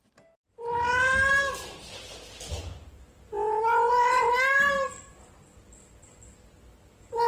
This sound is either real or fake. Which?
real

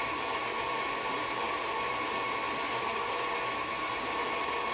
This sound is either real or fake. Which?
real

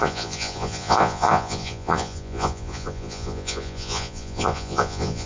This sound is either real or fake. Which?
fake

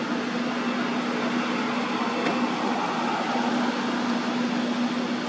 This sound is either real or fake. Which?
real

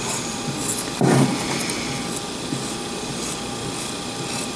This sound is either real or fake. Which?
real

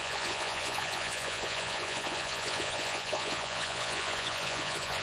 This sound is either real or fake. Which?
fake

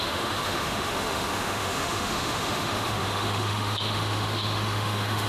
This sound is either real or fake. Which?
fake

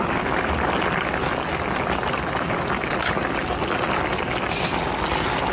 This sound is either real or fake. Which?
real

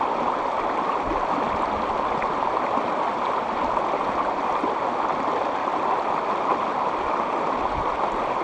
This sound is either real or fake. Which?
real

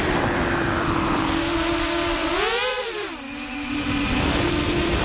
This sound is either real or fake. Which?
fake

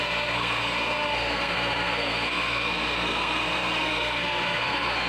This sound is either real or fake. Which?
fake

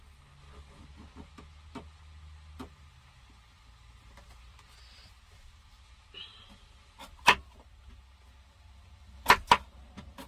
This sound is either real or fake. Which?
real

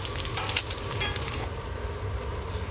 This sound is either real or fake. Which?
real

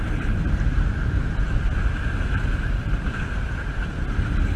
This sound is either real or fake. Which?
real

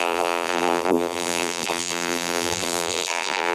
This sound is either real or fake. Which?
fake